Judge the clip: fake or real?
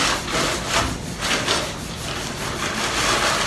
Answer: real